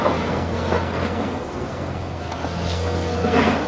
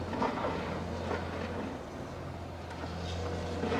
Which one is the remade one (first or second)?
first